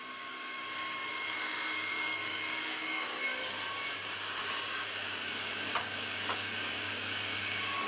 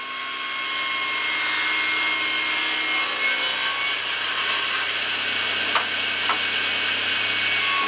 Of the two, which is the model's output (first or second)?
first